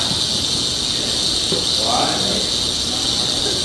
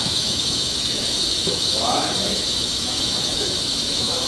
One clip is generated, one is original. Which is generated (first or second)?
second